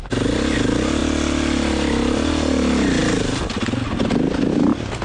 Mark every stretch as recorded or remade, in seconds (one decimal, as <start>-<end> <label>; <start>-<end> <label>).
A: 0.0-5.0 recorded